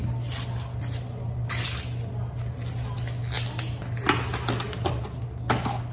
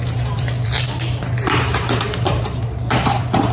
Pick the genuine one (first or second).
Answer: first